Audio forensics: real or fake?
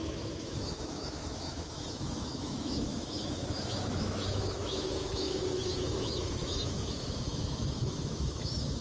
fake